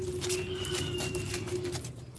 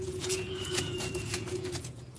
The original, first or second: first